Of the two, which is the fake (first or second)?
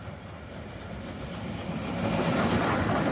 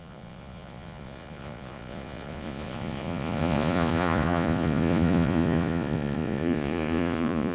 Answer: second